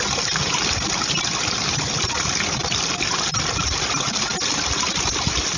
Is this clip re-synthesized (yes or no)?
no